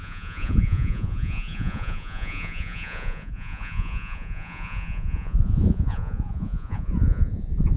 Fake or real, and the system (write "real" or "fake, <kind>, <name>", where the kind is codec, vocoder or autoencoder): fake, vocoder, Vocos